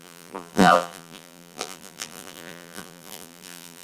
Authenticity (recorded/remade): remade